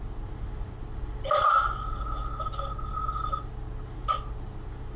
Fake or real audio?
real